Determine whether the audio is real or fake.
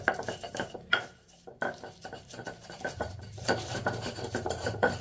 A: fake